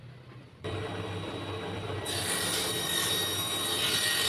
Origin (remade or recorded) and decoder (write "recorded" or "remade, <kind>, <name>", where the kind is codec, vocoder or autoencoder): remade, vocoder, BigVGAN v2